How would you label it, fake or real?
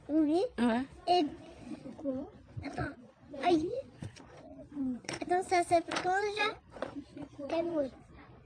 fake